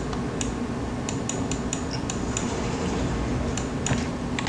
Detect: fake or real real